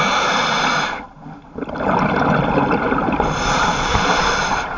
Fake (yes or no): no